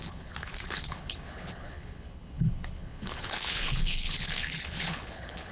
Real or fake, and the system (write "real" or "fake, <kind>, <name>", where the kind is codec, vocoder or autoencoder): fake, codec, HILCodec